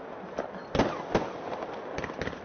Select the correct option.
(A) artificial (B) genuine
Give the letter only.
B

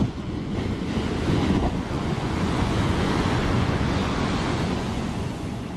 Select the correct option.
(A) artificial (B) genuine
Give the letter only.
A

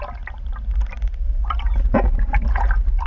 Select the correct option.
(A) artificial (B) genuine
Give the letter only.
B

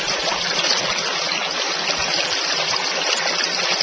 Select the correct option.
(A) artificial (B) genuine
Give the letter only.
B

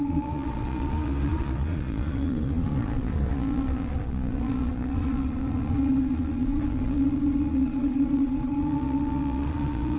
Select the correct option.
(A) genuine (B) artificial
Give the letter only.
B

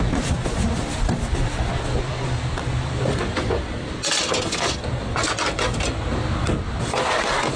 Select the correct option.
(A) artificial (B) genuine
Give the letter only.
B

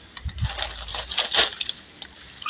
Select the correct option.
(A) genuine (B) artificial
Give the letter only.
A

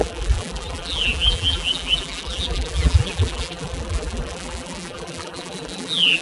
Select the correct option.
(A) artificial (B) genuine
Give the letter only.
A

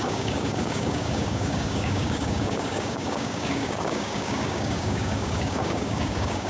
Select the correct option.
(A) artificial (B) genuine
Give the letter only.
A